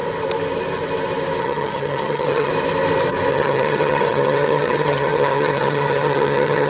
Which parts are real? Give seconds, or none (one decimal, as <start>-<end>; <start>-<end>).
0.0-1.4; 2.5-3.3